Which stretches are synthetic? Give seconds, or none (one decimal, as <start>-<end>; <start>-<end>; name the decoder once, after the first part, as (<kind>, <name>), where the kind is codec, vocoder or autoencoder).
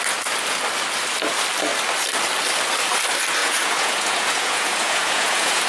3.4-5.7 (vocoder, Vocos)